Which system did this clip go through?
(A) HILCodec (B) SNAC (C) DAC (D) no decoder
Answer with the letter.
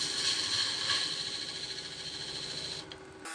D